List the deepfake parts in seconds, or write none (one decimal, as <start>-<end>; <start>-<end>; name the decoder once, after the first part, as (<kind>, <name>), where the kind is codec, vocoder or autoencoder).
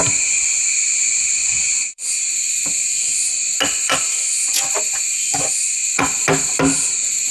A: 1.4-2.3 (vocoder, Vocos); 3.7-6.2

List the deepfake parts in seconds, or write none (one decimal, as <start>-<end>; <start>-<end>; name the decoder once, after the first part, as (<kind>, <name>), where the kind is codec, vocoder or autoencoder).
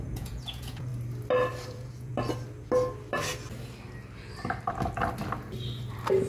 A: 0.0-0.9 (vocoder, Vocos); 1.7-2.1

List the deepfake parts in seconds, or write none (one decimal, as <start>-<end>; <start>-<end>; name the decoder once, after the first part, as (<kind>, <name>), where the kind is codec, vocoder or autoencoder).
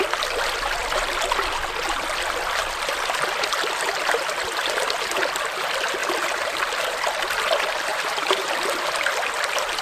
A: 6.0-6.9 (vocoder, BigVGAN v2); 7.9-8.5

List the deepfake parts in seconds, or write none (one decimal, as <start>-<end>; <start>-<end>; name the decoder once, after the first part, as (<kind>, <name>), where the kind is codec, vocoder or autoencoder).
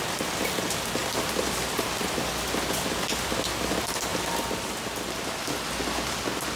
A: 1.0-2.0 (vocoder, BigVGAN v2); 4.1-5.8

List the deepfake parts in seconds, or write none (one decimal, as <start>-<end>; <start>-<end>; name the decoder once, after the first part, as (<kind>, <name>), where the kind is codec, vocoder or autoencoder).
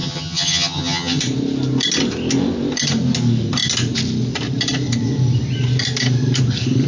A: 0.0-1.2 (vocoder, HiFi-GAN)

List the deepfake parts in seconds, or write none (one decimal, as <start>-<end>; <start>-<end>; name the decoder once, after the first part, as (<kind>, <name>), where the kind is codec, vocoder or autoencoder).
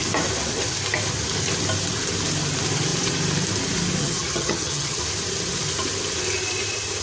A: 4.0-5.0 (vocoder, HiFi-GAN)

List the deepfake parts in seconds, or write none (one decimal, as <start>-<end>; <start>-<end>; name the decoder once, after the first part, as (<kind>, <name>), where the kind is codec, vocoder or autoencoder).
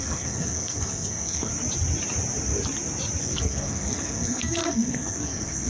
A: 0.0-1.5 (codec, SNAC); 3.2-5.7